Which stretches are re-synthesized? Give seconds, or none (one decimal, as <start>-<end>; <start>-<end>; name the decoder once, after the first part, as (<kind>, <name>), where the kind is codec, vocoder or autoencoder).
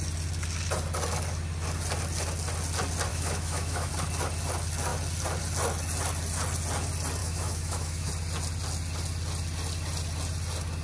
3.1-3.9 (autoencoder, DAC-VAE); 7.2-8.1